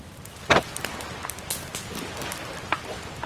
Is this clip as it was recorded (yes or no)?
yes